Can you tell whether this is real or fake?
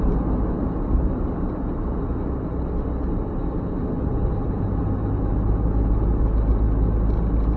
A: real